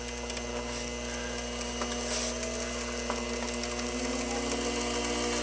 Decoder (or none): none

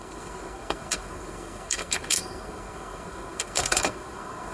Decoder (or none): codec, SNAC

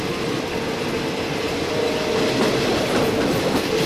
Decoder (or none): none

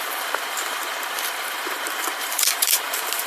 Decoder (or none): vocoder, BigVGAN v2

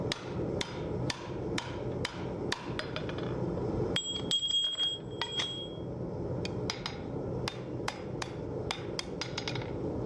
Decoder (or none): none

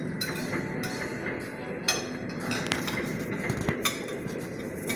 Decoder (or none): none